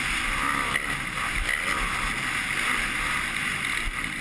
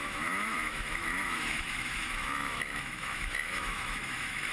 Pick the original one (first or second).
first